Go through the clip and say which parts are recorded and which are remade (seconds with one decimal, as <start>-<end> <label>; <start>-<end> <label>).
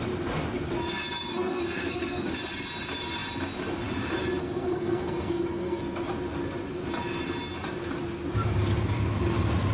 0.0-1.3 recorded; 1.3-2.3 remade; 2.3-4.4 recorded; 4.4-5.8 remade; 5.8-9.7 recorded